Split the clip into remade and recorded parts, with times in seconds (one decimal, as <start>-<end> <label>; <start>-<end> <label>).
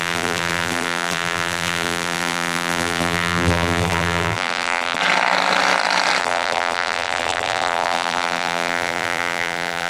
0.0-5.0 remade; 5.0-6.2 recorded; 6.2-9.9 remade